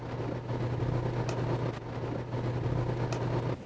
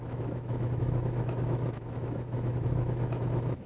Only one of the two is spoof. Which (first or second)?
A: second